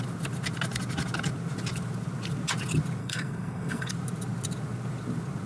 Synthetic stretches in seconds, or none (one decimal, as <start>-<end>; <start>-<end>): 3.0-3.9